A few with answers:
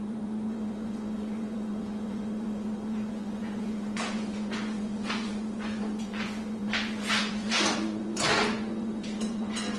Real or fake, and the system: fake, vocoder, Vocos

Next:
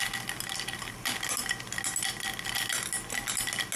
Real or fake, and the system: real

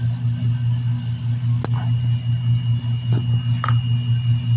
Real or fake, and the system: real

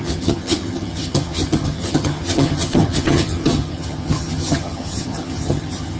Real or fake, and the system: fake, vocoder, HiFi-GAN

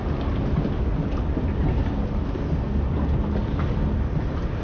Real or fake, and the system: real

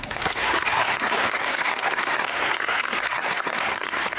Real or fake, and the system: fake, codec, SNAC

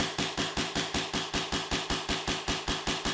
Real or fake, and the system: real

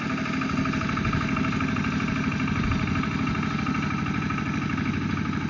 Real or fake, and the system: real